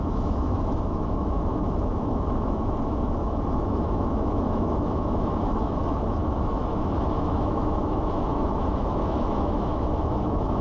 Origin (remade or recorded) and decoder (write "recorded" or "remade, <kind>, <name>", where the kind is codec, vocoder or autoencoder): remade, autoencoder, DAC-VAE